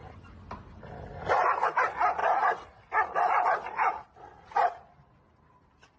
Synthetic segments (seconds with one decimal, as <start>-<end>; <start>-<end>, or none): none